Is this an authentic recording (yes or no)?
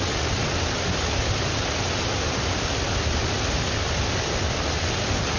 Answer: yes